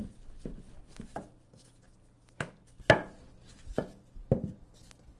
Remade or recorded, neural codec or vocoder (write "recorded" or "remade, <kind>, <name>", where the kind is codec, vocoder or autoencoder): recorded